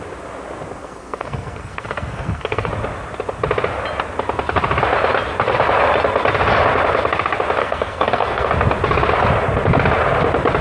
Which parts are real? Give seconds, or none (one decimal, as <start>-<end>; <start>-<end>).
0.0-0.8; 2.7-7.6; 8.5-10.6